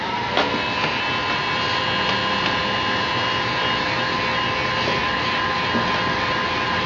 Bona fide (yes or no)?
yes